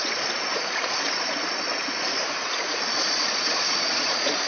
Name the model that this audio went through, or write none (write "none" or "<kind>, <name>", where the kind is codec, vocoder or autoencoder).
vocoder, Vocos